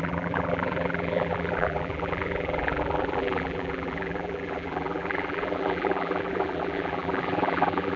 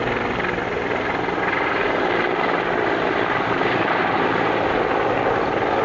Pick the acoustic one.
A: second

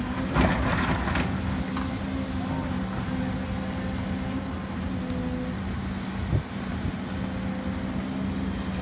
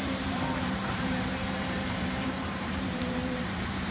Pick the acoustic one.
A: first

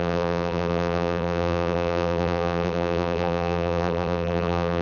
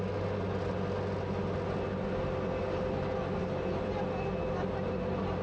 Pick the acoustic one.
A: second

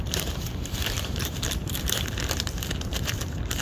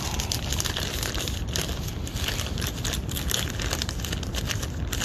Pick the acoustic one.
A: second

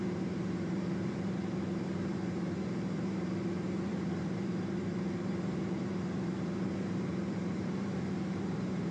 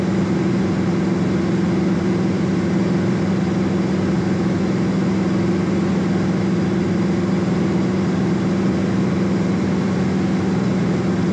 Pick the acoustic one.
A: second